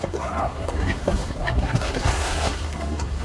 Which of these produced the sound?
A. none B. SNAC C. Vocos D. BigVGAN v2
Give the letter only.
B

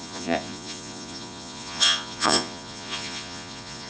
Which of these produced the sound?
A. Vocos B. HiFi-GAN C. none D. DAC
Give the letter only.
A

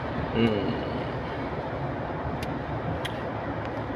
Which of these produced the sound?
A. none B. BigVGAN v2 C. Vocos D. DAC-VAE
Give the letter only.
A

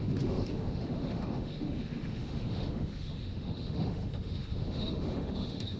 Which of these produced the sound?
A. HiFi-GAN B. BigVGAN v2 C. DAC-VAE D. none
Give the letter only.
C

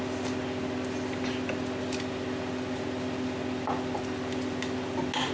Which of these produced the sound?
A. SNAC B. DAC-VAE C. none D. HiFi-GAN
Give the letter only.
C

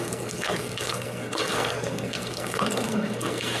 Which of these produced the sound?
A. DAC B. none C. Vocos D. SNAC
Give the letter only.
D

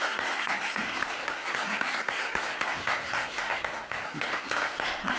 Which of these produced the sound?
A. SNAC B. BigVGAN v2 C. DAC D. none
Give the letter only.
A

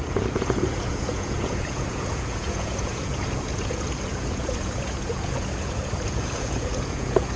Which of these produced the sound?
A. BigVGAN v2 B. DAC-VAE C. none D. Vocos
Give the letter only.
D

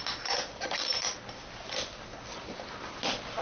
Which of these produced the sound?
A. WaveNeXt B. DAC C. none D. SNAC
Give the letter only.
C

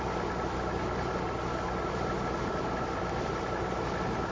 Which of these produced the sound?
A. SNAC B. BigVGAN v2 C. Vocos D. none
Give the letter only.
D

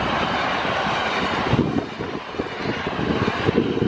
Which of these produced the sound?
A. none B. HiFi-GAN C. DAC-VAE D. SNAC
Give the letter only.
A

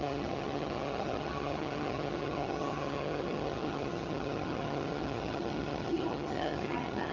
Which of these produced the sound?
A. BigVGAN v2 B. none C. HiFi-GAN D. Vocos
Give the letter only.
C